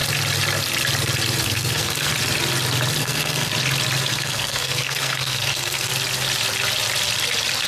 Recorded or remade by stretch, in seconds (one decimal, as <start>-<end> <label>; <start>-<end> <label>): 0.0-1.4 recorded; 1.4-2.1 remade; 2.1-3.0 recorded; 3.0-3.5 remade; 3.5-4.1 recorded; 4.1-5.9 remade; 5.9-7.7 recorded